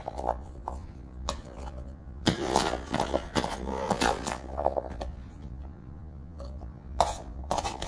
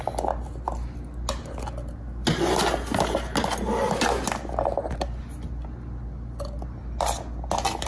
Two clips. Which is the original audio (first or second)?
second